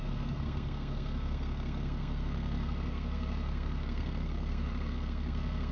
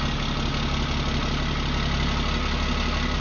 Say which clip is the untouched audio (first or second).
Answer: second